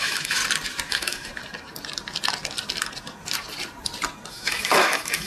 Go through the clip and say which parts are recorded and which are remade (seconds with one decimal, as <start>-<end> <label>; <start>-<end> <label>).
0.0-0.4 remade; 0.4-0.9 recorded; 0.9-1.3 remade; 1.3-4.3 recorded; 4.3-5.3 remade